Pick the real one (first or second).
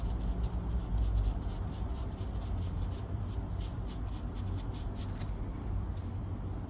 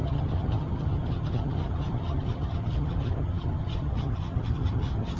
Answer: first